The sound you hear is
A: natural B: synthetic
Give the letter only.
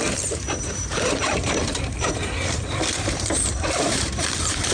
B